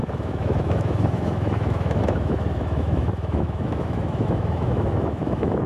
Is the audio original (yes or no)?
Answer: no